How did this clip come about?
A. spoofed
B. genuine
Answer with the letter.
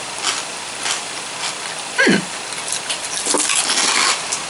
B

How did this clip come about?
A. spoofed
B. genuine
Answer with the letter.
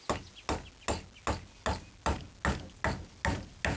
B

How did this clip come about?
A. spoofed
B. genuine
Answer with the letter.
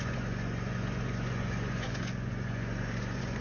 A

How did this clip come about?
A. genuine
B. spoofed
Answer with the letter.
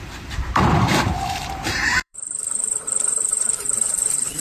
B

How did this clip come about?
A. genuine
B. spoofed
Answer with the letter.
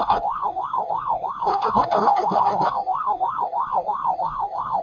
B